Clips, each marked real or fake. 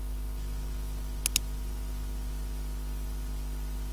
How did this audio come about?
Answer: real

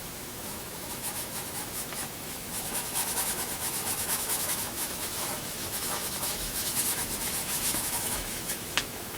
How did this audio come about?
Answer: fake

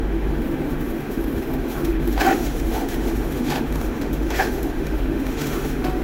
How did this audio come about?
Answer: fake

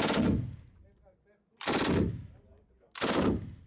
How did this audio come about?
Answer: real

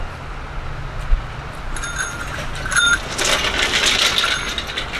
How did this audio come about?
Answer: real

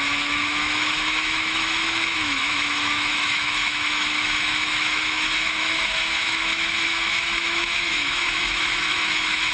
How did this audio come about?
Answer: fake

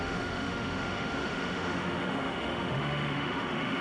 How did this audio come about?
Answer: fake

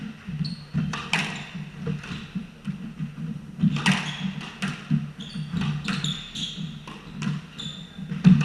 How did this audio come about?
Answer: real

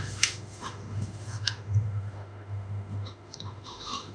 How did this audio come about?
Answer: fake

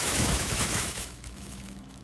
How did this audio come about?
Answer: fake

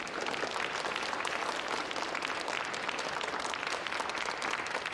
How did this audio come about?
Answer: real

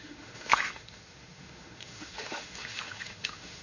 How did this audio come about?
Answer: fake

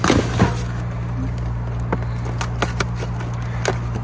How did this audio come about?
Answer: real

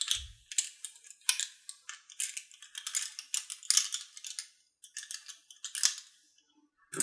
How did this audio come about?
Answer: real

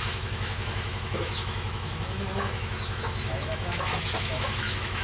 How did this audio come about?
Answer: fake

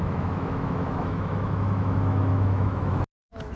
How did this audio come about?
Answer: fake